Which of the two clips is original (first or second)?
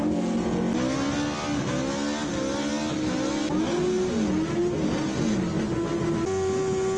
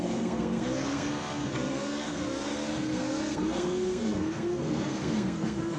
first